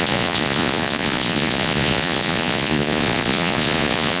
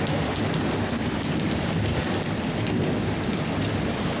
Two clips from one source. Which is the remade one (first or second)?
first